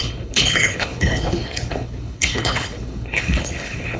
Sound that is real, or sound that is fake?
fake